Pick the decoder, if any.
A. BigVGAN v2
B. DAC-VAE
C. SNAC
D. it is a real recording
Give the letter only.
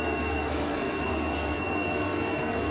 C